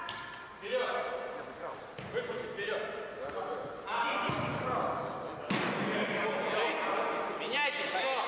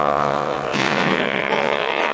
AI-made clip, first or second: second